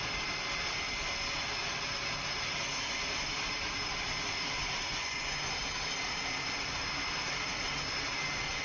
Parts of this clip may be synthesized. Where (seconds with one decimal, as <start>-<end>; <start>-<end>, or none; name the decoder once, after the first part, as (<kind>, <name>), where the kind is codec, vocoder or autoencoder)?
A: 4.9-5.5 (vocoder, Vocos)